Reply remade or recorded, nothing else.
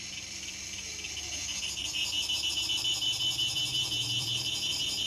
remade